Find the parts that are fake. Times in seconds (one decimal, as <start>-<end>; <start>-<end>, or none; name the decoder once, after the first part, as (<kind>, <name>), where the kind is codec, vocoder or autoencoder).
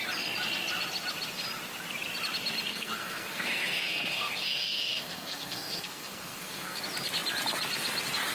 2.7-6.8 (codec, SNAC)